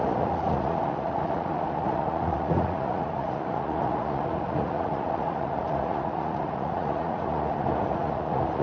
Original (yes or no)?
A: no